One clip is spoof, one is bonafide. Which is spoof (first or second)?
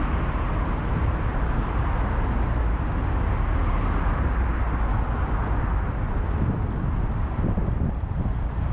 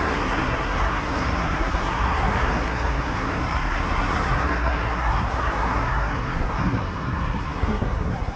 second